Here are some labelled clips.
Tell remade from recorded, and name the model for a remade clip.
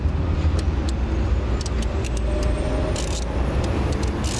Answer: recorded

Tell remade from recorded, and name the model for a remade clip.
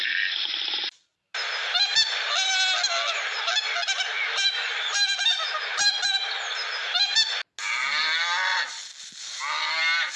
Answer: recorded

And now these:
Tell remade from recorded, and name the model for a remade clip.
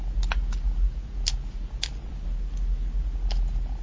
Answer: recorded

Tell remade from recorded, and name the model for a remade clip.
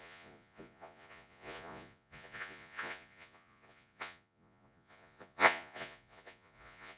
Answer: remade, vocoder, Vocos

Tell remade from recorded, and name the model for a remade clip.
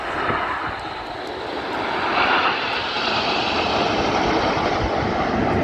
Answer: recorded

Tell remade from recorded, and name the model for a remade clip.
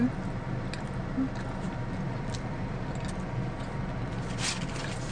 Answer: recorded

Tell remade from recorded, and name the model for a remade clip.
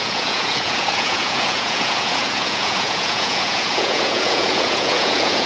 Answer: remade, vocoder, Vocos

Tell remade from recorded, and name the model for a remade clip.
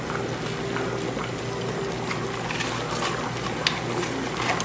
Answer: recorded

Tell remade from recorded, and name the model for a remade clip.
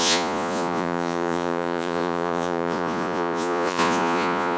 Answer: remade, vocoder, Vocos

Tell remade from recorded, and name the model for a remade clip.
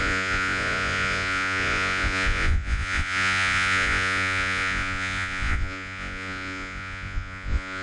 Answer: remade, vocoder, Vocos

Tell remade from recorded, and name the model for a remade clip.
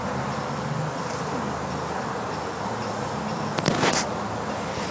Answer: recorded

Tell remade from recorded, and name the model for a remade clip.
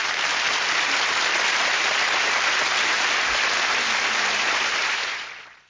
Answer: recorded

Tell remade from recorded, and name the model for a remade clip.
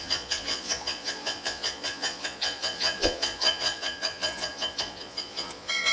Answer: remade, vocoder, Vocos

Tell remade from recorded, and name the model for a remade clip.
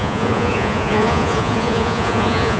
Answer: remade, vocoder, Vocos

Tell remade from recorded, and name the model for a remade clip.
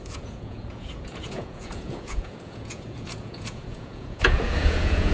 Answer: remade, vocoder, Vocos